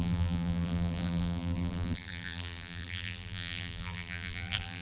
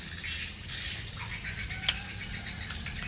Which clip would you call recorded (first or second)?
second